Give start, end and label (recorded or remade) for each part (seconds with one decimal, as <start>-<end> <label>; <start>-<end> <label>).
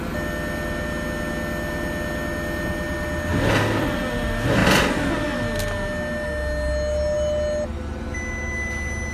0.0-9.1 recorded